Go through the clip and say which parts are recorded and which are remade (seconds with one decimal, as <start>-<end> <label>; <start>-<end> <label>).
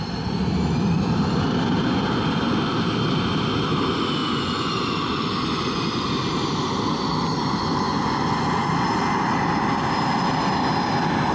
0.0-4.2 recorded; 4.2-4.7 remade; 4.7-7.6 recorded; 7.6-8.7 remade; 8.7-11.3 recorded